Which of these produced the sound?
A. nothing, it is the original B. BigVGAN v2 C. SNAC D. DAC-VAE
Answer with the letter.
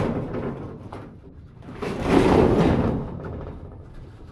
B